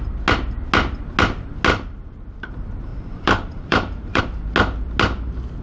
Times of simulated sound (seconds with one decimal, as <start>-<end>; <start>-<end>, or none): 1.7-2.5; 2.9-4.2